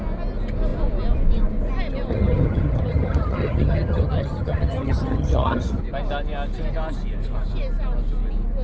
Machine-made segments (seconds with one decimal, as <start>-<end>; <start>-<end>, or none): 2.1-5.8